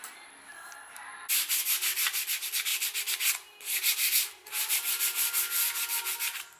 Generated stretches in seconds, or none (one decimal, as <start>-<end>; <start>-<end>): none